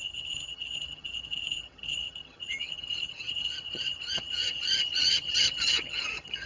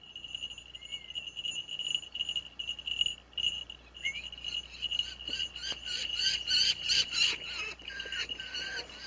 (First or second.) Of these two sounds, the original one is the second